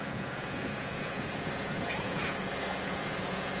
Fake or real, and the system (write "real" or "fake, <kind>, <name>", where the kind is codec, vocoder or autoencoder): fake, vocoder, Vocos